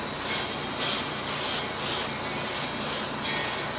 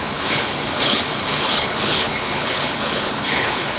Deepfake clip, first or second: second